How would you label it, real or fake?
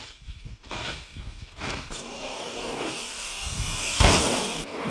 fake